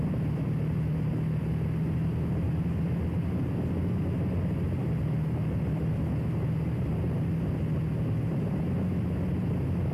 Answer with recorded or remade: recorded